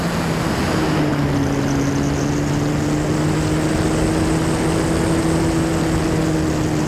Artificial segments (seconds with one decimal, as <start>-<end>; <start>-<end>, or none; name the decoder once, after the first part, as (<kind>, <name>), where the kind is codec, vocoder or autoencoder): none